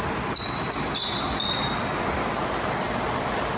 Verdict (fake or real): real